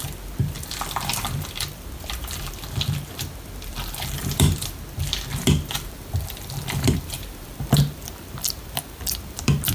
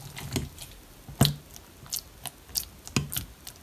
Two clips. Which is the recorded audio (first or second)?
second